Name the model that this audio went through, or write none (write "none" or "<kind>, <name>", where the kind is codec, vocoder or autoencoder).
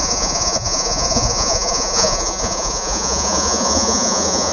vocoder, Vocos